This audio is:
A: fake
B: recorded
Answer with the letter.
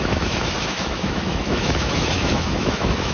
A